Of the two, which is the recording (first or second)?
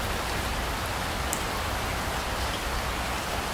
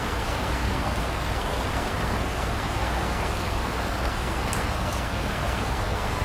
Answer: first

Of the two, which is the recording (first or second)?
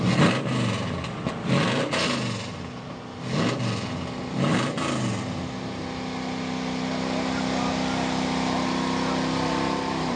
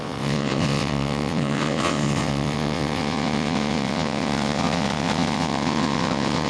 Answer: first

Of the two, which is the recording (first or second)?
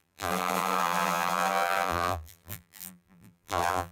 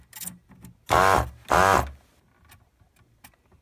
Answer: second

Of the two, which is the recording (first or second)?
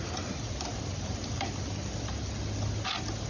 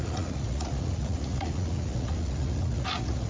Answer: first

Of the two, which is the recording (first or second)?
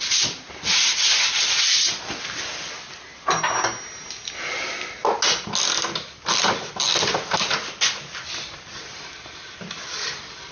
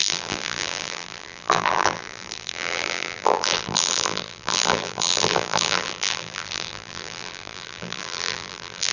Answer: first